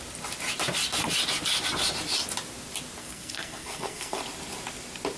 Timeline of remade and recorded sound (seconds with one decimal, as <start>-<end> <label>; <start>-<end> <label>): 0.0-3.0 recorded; 3.0-4.2 remade; 4.2-5.2 recorded